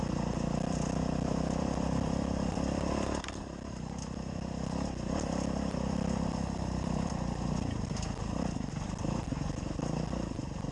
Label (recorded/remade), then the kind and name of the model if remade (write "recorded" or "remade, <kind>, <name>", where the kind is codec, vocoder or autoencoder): remade, vocoder, BigVGAN v2